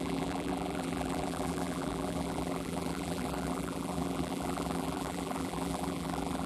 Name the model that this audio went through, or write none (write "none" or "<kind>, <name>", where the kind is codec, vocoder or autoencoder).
vocoder, BigVGAN v2